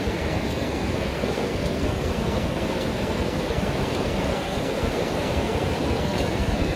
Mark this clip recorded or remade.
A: remade